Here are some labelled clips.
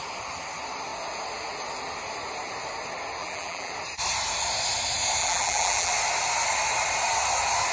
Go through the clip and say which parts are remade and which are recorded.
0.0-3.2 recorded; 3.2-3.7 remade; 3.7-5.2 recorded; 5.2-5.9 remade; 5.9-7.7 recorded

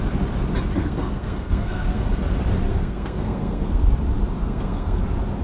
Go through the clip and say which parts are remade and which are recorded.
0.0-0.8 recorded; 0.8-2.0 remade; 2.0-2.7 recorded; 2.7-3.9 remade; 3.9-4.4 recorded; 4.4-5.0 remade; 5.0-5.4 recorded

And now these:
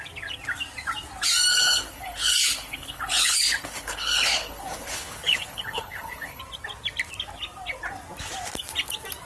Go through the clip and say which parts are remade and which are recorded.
0.0-1.5 recorded; 1.5-6.4 remade; 6.4-9.3 recorded

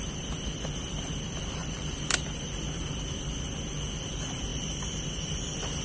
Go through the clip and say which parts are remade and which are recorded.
0.0-5.8 remade

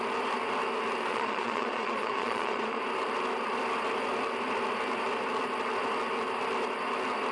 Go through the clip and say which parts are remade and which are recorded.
0.0-1.1 recorded; 1.1-2.8 remade; 2.8-7.3 recorded

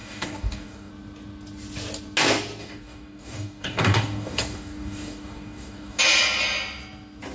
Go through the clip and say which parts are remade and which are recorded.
0.0-0.9 remade; 0.9-2.6 recorded; 2.6-6.0 remade; 6.0-7.3 recorded

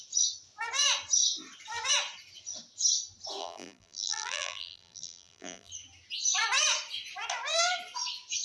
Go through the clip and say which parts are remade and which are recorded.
0.0-3.4 recorded; 3.4-5.7 remade; 5.7-8.4 recorded